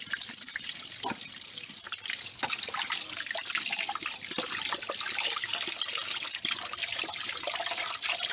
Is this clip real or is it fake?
real